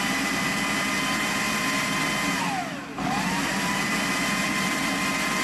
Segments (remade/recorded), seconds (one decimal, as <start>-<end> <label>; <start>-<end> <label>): 0.0-2.9 recorded; 2.9-4.3 remade; 4.3-5.4 recorded